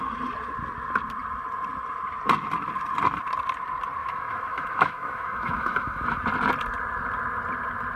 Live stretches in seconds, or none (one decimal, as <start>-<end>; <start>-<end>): 0.0-4.0; 6.2-8.0